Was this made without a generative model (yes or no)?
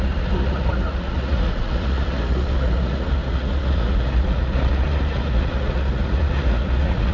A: no